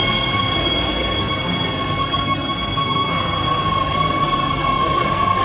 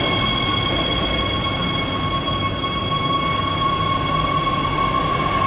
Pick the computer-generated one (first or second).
first